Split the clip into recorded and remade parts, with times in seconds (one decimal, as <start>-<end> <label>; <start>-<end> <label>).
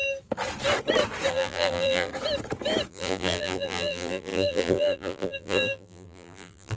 0.0-1.3 recorded; 1.3-2.1 remade; 2.1-2.9 recorded; 2.9-6.8 remade